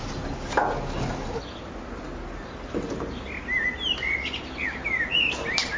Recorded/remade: recorded